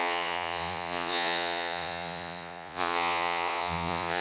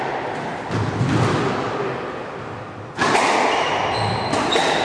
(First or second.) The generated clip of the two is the first